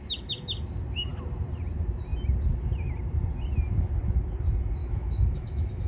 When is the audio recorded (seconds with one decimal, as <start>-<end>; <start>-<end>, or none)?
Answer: 0.0-4.8